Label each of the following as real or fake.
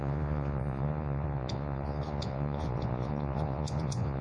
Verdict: fake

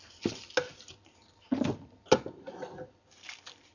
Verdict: real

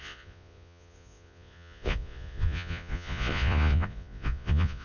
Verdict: fake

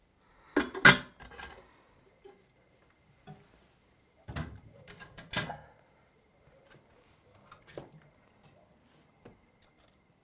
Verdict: real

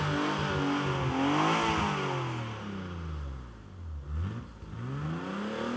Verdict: real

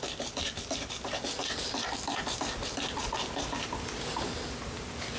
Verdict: real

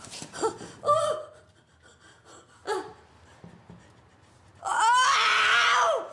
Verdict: real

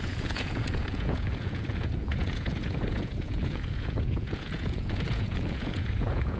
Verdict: fake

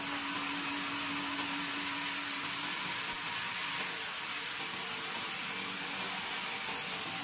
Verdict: real